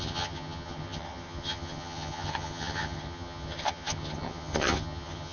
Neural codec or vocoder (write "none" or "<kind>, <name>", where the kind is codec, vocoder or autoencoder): vocoder, HiFi-GAN